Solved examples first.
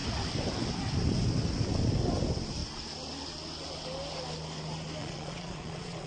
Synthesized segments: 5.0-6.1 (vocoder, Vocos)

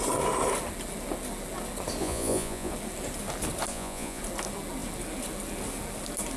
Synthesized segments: 2.0-2.7 (vocoder, Vocos); 3.7-4.2

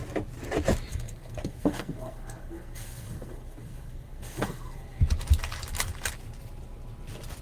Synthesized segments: 0.9-5.0 (codec, SNAC)